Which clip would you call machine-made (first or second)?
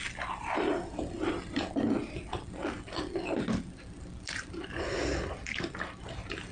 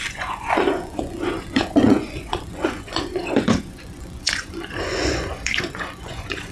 second